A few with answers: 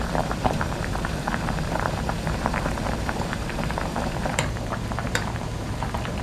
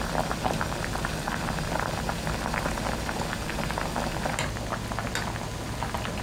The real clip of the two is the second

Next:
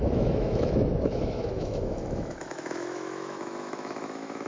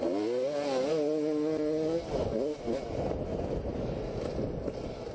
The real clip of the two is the second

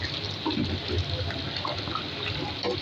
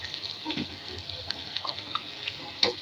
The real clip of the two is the first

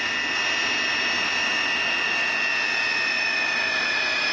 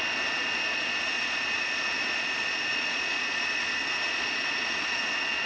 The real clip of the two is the first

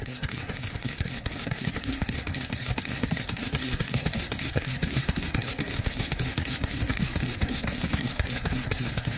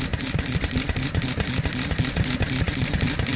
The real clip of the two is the second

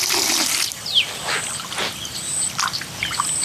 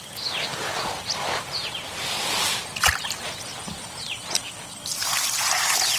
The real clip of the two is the second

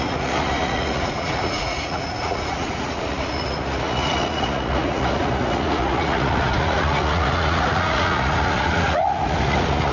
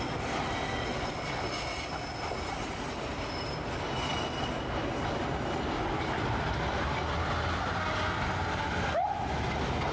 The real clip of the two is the second